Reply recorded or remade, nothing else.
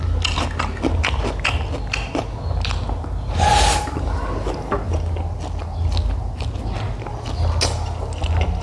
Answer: recorded